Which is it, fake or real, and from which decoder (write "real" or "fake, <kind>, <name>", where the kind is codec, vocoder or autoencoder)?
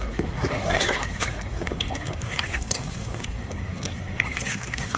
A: fake, codec, SNAC